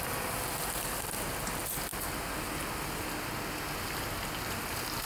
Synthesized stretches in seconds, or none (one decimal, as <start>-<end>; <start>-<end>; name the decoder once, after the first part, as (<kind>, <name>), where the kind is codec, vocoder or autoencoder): none